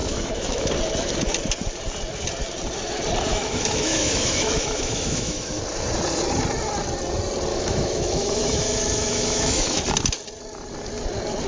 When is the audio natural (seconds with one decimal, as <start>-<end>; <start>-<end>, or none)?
0.7-3.3; 5.6-7.5; 9.8-11.5